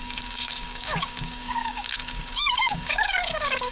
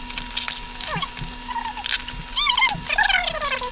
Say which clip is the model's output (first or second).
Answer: first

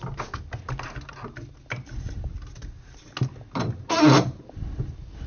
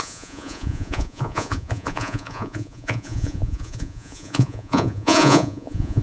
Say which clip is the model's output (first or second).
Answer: second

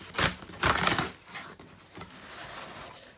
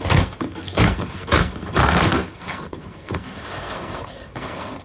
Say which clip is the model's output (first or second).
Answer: second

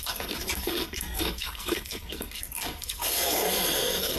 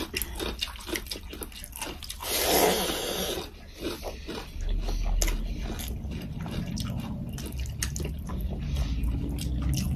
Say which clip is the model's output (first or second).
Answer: first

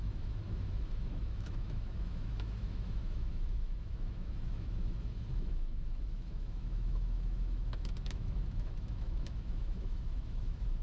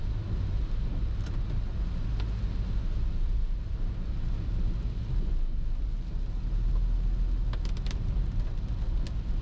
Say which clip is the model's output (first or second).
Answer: first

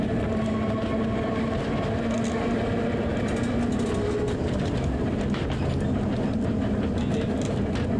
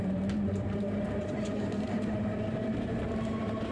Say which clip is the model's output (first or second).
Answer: second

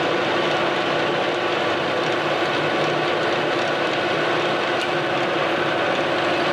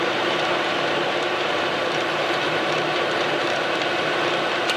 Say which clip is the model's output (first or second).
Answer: second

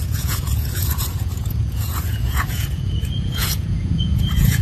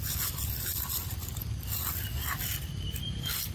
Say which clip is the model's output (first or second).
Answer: first